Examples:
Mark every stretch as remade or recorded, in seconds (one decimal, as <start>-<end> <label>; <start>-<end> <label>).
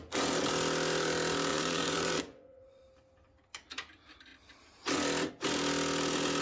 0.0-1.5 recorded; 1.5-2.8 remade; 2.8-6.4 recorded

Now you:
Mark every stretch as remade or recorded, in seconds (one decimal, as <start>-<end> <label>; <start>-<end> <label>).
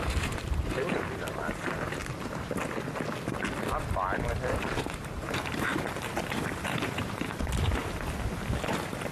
0.0-2.0 remade; 2.0-4.8 recorded; 4.8-5.7 remade; 5.7-6.3 recorded; 6.3-7.8 remade; 7.8-8.7 recorded; 8.7-9.1 remade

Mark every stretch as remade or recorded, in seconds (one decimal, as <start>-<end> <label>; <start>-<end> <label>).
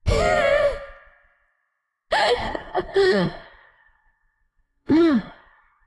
0.0-2.2 recorded; 2.2-5.9 remade